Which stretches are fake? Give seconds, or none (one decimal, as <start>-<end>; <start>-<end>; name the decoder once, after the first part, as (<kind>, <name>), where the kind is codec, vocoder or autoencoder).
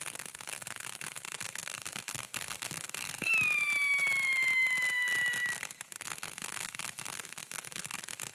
0.0-3.3 (codec, SNAC); 5.6-8.3